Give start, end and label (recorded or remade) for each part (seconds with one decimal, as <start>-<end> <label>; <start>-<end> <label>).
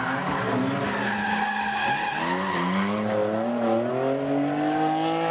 0.0-5.3 recorded